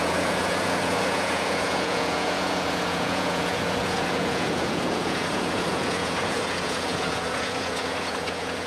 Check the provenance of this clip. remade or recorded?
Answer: remade